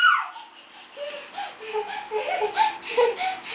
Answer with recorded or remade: recorded